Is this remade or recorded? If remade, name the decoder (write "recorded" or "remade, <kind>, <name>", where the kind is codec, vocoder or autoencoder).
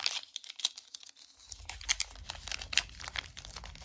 recorded